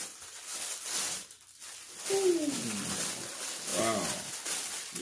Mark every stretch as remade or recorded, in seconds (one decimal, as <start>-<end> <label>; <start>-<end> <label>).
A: 0.0-5.0 recorded